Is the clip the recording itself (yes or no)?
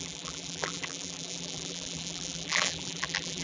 no